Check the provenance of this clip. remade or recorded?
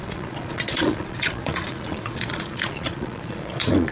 remade